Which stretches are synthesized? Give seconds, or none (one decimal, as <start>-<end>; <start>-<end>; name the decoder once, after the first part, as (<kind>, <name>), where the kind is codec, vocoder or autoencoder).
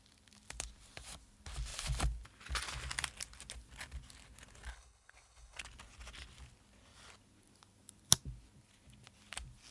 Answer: 4.7-5.6 (codec, HILCodec)